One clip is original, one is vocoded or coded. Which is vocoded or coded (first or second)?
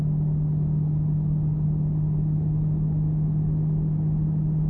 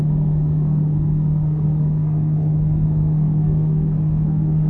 second